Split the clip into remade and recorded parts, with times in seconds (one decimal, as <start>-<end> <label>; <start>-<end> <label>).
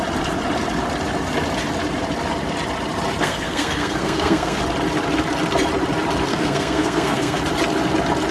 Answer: 0.0-3.2 recorded; 3.2-4.6 remade; 4.6-6.3 recorded; 6.3-7.4 remade; 7.4-8.3 recorded